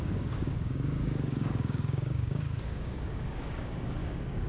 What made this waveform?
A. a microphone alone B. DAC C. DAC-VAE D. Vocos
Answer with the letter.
B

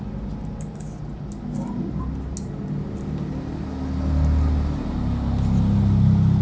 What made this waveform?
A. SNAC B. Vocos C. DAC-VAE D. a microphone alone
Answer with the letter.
D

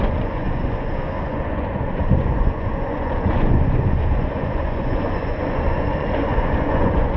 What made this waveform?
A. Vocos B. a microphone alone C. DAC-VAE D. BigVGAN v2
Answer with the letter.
A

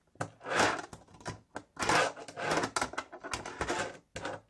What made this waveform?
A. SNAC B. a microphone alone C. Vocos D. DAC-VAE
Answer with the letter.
B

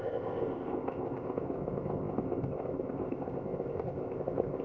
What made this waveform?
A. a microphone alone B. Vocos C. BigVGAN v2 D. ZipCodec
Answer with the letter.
D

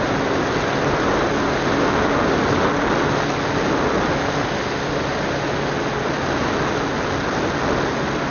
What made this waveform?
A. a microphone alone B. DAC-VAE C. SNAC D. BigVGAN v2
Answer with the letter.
A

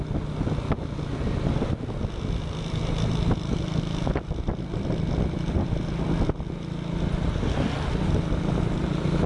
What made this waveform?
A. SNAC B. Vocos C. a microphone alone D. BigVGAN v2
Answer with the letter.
C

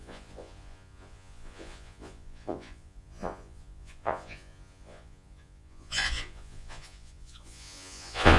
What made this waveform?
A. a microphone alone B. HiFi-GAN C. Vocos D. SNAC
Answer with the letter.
C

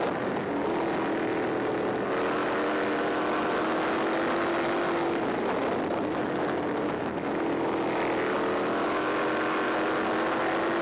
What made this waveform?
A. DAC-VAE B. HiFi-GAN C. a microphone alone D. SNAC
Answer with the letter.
C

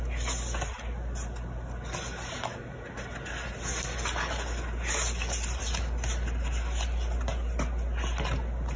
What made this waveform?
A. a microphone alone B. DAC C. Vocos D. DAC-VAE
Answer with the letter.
A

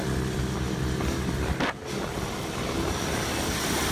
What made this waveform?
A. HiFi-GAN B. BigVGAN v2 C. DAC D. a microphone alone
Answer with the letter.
D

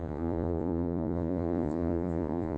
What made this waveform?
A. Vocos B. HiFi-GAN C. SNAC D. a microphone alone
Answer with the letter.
A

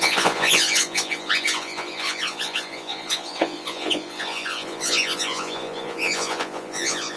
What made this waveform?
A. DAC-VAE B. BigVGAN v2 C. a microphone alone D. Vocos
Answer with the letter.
D